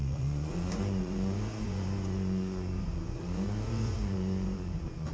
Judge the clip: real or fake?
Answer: fake